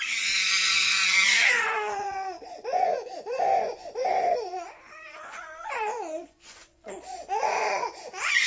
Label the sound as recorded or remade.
remade